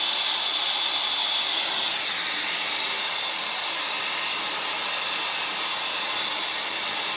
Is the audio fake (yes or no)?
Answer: no